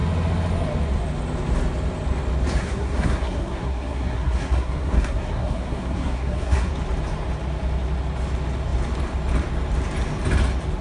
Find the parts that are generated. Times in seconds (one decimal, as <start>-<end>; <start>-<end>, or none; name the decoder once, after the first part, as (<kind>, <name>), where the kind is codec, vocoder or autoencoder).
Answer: 2.6-6.7 (codec, SNAC)